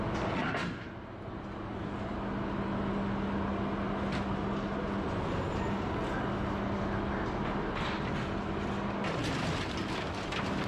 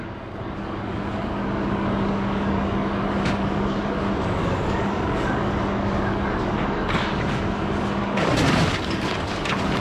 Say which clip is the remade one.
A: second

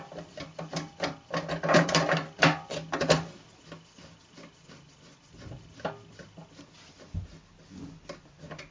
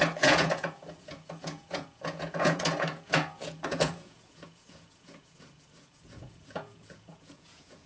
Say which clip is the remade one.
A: second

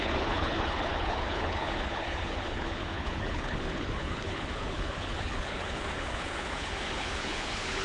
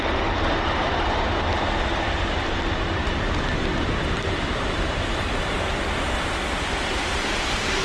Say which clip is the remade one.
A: first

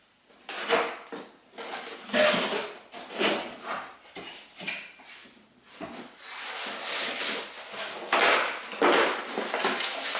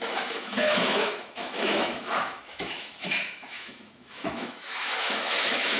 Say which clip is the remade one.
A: second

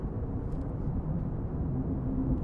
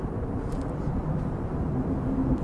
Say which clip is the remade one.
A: second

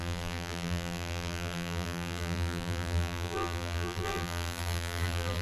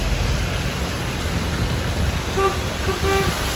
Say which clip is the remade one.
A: first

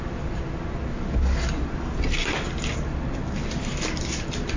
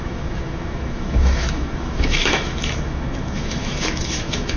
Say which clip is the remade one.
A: second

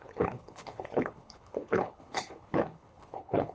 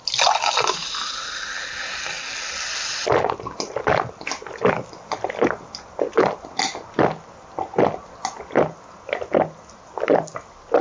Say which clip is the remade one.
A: first